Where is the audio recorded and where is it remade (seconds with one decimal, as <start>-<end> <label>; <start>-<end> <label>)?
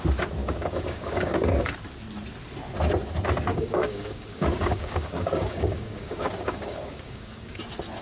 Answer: 0.0-0.4 recorded; 0.4-1.7 remade; 1.7-3.5 recorded; 3.5-7.6 remade; 7.6-8.0 recorded